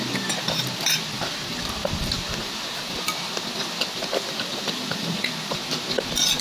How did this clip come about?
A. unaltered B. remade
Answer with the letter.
A